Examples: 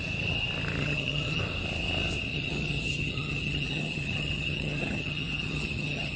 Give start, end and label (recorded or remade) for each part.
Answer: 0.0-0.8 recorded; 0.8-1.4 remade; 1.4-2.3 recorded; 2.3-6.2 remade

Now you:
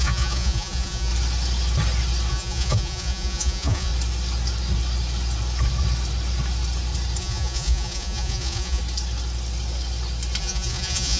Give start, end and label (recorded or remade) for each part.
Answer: 0.0-1.1 remade; 1.1-2.3 recorded; 2.3-3.9 remade; 3.9-7.2 recorded; 7.2-8.8 remade; 8.8-10.4 recorded; 10.4-11.2 remade

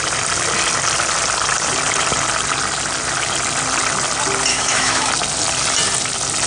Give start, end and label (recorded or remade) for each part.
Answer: 0.0-4.5 recorded; 4.5-5.1 remade; 5.1-6.5 recorded

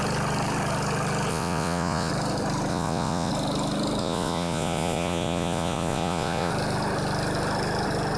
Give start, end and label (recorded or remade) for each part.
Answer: 0.0-1.3 recorded; 1.3-2.1 remade; 2.1-2.7 recorded; 2.7-3.3 remade; 3.3-4.0 recorded; 4.0-6.5 remade; 6.5-8.2 recorded